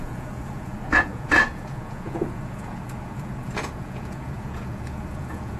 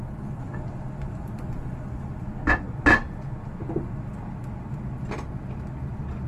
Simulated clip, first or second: first